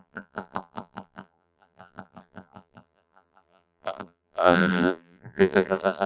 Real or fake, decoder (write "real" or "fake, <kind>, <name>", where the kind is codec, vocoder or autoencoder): fake, vocoder, BigVGAN v2